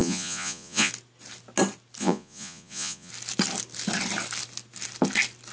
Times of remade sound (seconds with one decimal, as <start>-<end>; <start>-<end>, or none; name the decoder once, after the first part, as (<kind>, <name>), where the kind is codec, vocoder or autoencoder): 0.0-0.9 (vocoder, Vocos); 2.0-3.1